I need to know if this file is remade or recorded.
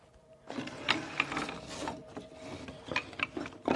recorded